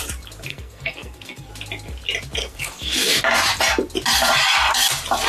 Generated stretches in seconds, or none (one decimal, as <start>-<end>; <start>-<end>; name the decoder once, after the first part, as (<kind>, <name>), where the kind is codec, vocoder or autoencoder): 0.5-1.5 (codec, SNAC); 2.4-3.2